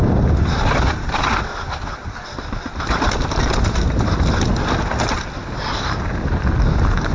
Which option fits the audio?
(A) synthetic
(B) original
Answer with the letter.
B